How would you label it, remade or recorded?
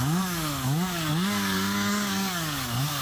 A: remade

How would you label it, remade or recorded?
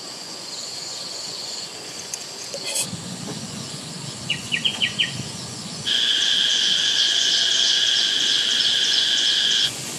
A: remade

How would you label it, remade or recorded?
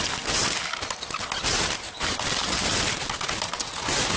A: recorded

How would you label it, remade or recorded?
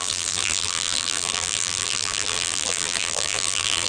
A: remade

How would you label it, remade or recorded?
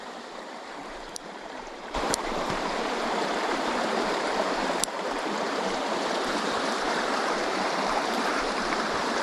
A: remade